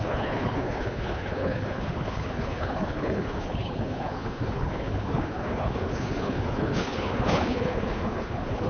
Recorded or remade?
remade